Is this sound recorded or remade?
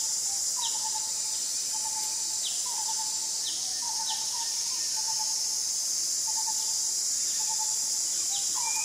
recorded